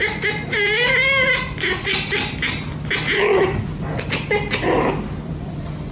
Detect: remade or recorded recorded